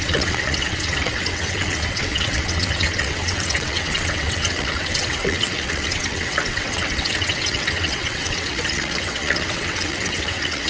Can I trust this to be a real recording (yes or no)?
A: no